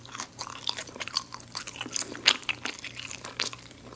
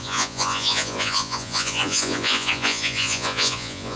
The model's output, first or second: second